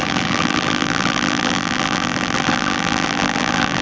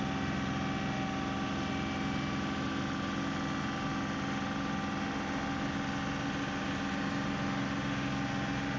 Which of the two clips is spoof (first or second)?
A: first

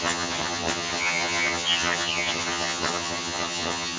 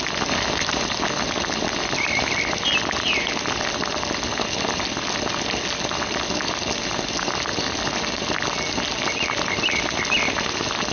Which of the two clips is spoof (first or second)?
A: first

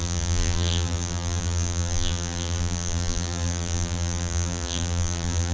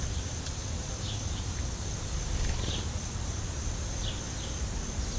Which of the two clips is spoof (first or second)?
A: first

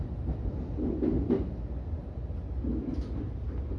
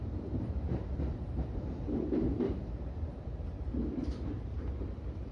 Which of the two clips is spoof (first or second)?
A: second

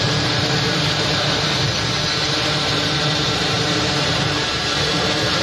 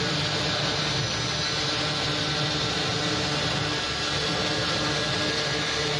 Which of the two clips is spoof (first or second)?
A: first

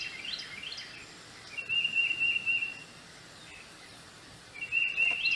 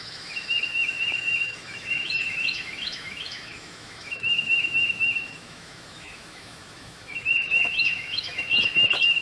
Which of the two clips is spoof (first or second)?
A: second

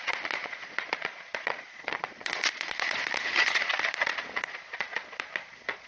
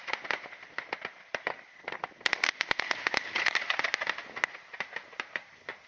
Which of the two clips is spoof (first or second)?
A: first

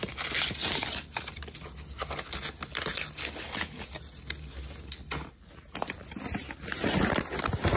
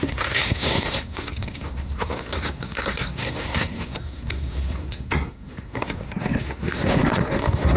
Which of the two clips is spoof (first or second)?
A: second